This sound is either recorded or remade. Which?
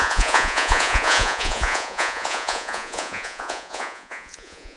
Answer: remade